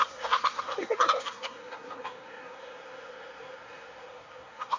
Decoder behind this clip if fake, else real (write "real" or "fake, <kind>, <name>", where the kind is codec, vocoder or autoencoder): fake, codec, SNAC